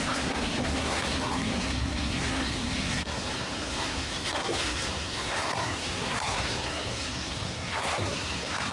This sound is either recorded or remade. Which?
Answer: remade